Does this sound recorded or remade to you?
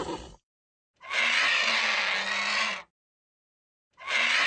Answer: recorded